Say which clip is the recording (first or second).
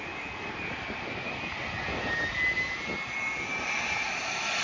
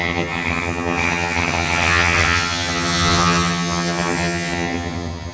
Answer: first